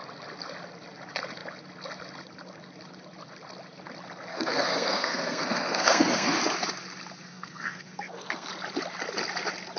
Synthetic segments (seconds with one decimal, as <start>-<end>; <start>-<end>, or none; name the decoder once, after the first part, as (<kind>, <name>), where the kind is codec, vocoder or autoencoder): 4.3-6.4 (codec, SNAC); 7.3-8.5